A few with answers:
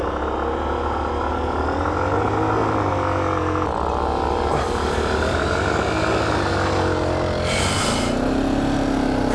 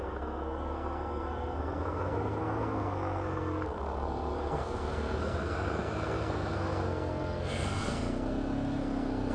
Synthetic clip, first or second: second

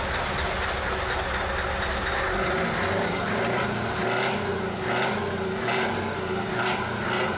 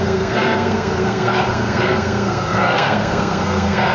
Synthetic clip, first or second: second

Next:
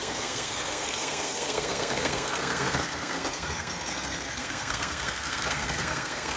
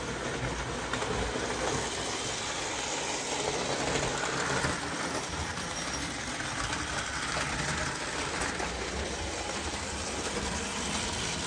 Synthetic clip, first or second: first